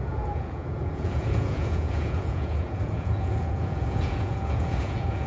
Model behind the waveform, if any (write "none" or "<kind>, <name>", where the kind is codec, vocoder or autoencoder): vocoder, Vocos